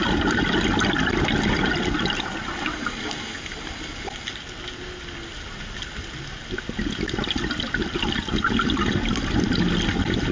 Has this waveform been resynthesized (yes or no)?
no